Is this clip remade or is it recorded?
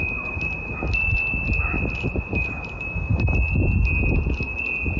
recorded